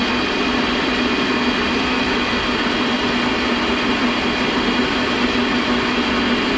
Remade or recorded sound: recorded